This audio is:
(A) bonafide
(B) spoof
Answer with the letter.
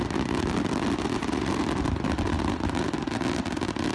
B